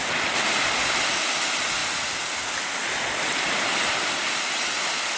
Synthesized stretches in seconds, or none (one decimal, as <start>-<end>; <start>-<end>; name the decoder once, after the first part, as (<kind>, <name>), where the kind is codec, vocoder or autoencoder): none